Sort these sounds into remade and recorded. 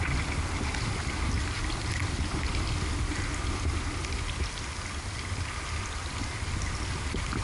recorded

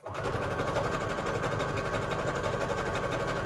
recorded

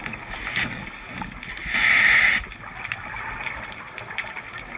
recorded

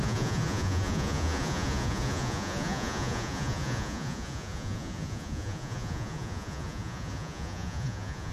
remade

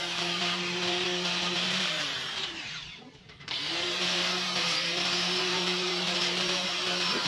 remade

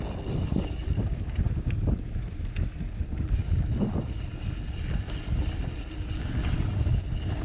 recorded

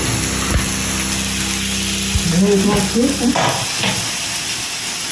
recorded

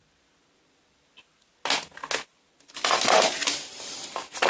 recorded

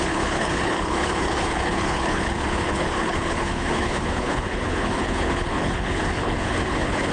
remade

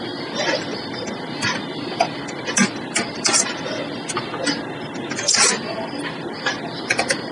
recorded